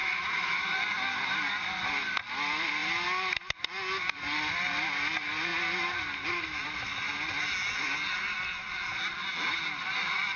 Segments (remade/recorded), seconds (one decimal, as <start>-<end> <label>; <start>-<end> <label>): 0.0-0.7 remade; 0.7-10.4 recorded

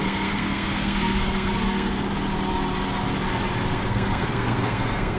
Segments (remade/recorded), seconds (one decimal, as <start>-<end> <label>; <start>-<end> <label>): 0.0-1.9 remade; 1.9-3.7 recorded; 3.7-5.2 remade

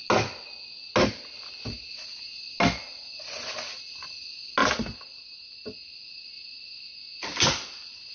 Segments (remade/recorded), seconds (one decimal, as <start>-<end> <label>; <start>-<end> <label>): 0.0-8.1 recorded

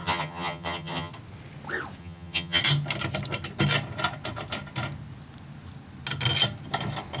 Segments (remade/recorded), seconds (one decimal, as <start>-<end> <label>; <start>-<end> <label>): 0.0-1.1 remade; 1.1-2.0 recorded; 2.0-2.6 remade; 2.6-7.2 recorded